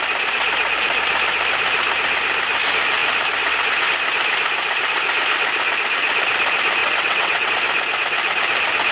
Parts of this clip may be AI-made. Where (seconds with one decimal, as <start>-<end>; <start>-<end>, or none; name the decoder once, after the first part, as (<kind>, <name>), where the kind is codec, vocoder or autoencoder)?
6.8-7.5 (vocoder, WaveNeXt)